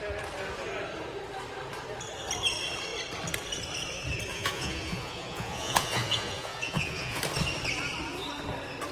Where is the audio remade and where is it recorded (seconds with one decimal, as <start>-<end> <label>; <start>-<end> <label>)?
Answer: 0.0-4.3 recorded; 4.3-7.2 remade; 7.2-8.9 recorded